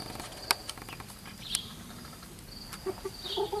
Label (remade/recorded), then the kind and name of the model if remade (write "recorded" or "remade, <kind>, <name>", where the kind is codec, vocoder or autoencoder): recorded